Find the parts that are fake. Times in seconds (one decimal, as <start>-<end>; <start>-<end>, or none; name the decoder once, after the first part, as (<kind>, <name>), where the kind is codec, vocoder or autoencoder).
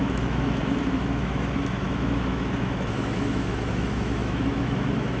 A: 0.0-5.2 (autoencoder, DAC-VAE)